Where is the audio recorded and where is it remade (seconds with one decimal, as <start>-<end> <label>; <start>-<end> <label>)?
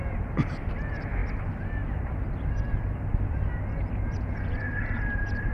0.0-5.5 recorded